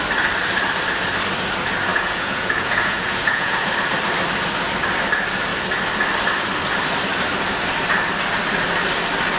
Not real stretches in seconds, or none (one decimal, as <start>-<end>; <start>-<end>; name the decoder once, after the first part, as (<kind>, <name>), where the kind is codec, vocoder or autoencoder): 1.9-3.7 (vocoder, Vocos)